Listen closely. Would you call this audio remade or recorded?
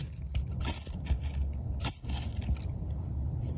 recorded